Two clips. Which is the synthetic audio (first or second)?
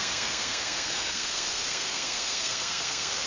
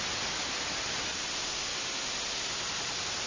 first